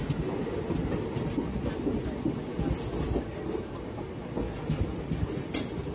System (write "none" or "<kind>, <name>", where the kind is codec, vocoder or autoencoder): none